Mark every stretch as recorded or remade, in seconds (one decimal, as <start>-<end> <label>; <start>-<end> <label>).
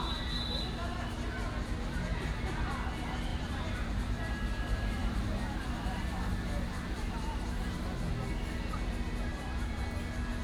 0.0-2.1 recorded; 2.1-2.7 remade; 2.7-3.3 recorded; 3.3-4.5 remade; 4.5-5.0 recorded; 5.0-7.4 remade; 7.4-9.3 recorded; 9.3-9.8 remade; 9.8-10.4 recorded